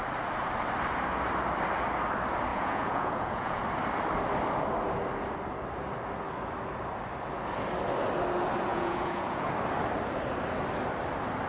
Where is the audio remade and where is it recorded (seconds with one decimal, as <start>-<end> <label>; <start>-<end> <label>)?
0.0-2.5 recorded; 2.5-3.6 remade; 3.6-8.7 recorded; 8.7-9.5 remade; 9.5-11.5 recorded